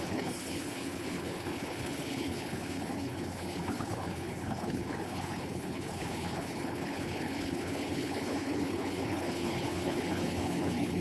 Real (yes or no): no